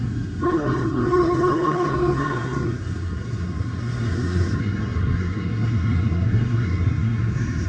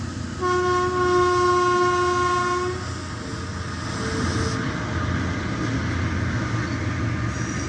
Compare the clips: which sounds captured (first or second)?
second